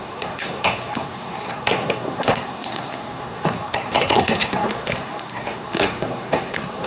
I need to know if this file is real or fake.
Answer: fake